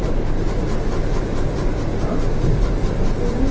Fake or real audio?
real